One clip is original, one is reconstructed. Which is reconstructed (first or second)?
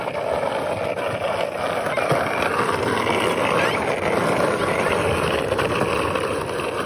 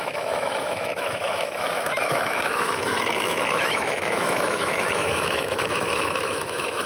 second